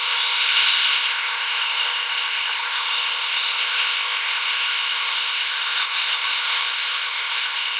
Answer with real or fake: fake